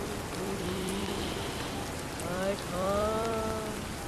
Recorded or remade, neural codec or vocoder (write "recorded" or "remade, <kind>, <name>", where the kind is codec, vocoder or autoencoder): remade, vocoder, BigVGAN v2